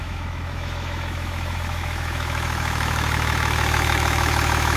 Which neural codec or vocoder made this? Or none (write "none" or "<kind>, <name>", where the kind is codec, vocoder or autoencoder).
autoencoder, DAC-VAE